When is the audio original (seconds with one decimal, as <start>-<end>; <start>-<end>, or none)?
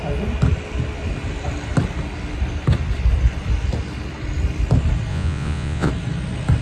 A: 0.0-5.1; 5.9-6.6